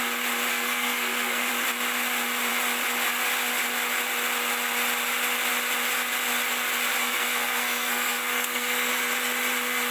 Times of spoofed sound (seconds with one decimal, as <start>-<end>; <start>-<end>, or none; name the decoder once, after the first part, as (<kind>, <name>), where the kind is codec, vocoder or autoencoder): 0.5-1.5 (codec, SNAC); 7.0-8.9